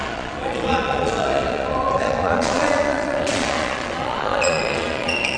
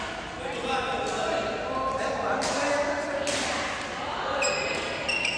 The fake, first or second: first